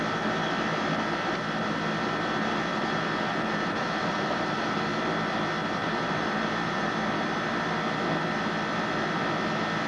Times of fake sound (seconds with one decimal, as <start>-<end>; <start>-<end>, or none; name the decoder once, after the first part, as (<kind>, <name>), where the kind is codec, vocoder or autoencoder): 2.7-4.8 (vocoder, BigVGAN v2); 5.8-6.9